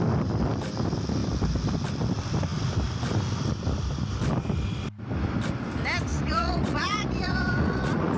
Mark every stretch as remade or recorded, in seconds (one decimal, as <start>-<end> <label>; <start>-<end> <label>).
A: 0.0-6.1 recorded; 6.1-8.2 remade